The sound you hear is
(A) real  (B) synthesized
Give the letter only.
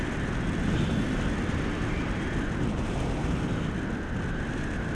A